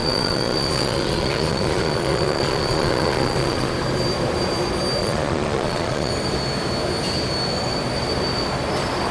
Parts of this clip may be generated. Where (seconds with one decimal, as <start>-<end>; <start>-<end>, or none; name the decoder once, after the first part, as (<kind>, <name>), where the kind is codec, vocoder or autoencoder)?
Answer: 0.0-3.7 (vocoder, Vocos); 5.0-6.1